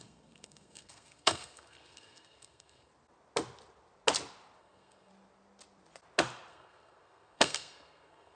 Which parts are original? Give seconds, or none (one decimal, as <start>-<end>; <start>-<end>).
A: 2.9-4.6; 5.1-6.5